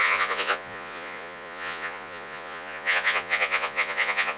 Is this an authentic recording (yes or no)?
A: no